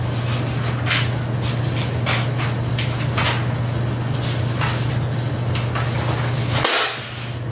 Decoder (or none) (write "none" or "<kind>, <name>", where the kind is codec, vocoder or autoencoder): none